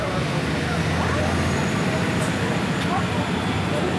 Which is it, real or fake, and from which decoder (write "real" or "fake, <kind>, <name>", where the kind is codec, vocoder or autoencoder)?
real